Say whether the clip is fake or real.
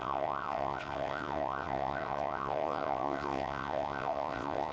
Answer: fake